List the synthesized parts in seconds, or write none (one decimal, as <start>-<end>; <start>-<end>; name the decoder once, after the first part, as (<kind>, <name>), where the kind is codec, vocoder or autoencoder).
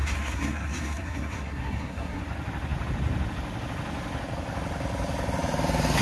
0.0-2.2 (codec, SNAC)